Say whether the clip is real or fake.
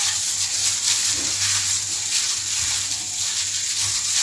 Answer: real